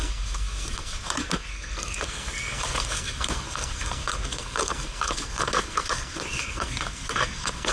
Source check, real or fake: fake